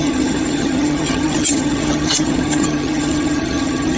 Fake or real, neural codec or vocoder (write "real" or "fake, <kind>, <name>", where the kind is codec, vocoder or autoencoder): fake, vocoder, HiFi-GAN